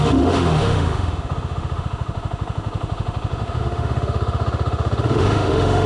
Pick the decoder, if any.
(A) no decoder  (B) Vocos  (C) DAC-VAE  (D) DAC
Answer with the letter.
C